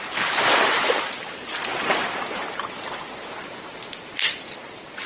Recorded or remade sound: remade